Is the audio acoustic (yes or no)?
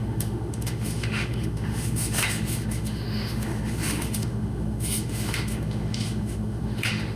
no